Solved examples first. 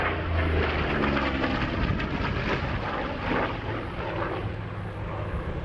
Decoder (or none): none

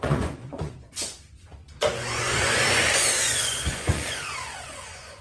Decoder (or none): vocoder, Vocos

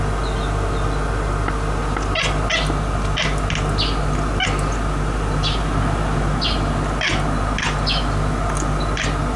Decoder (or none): none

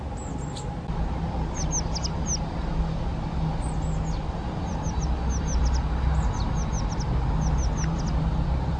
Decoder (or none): none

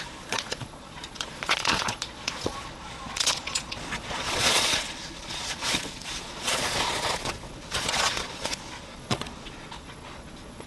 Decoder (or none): vocoder, Vocos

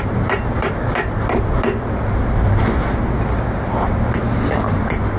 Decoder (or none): none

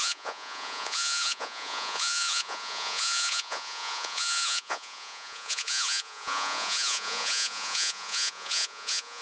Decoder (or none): vocoder, Vocos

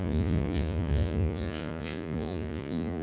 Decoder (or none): vocoder, Vocos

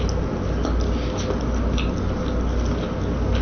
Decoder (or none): none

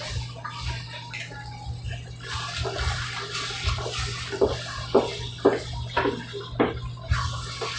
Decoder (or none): none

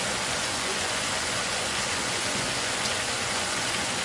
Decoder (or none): vocoder, Vocos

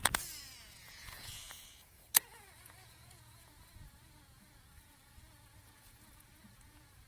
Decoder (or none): vocoder, Vocos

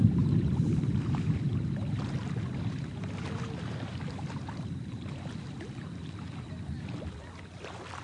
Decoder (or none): none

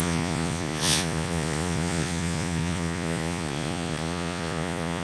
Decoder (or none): vocoder, Vocos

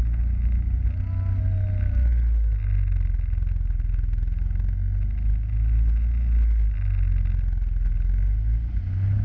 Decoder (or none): none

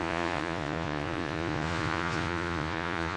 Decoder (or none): vocoder, Vocos